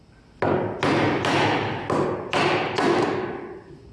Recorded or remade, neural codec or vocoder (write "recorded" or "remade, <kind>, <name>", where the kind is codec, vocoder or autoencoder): recorded